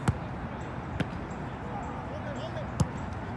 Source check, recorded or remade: recorded